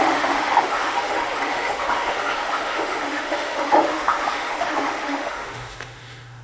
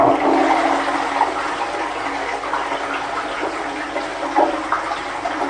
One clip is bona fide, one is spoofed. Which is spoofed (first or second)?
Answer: first